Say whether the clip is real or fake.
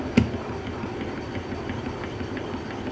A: fake